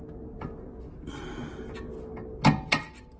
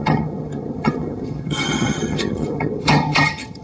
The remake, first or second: second